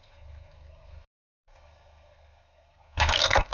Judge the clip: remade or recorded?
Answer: remade